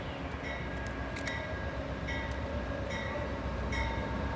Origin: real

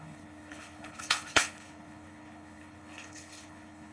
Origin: fake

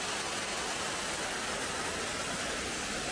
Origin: real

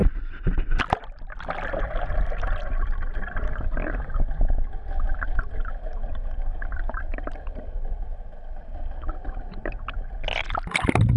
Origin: real